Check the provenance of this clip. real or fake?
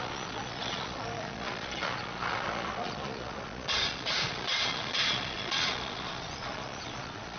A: fake